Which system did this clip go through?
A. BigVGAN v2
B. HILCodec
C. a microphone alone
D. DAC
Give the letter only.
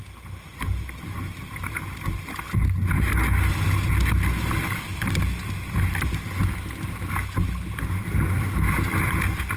C